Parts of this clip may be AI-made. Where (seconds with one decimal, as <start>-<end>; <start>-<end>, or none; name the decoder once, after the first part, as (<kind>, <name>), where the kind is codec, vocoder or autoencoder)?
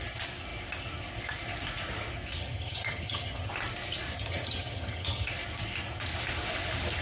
2.3-3.5 (vocoder, HiFi-GAN); 4.1-5.3